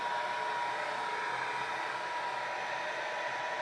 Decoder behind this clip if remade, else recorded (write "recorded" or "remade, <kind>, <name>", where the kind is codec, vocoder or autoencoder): recorded